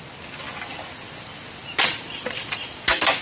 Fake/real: real